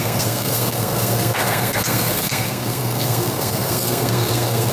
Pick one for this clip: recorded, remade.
remade